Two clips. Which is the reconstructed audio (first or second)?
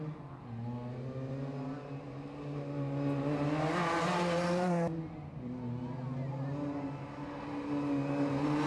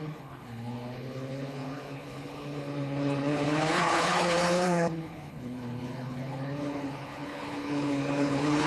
second